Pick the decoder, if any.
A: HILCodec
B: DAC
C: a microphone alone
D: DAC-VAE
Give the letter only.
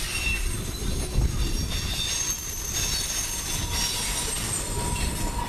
C